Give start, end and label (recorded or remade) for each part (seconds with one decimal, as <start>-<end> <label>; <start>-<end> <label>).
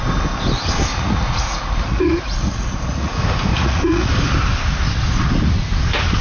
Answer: 0.0-0.9 recorded; 0.9-3.1 remade; 3.1-3.5 recorded; 3.5-4.1 remade; 4.1-6.2 recorded